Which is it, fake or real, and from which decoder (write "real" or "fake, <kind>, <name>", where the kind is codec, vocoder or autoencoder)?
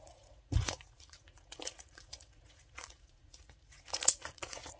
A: fake, vocoder, Vocos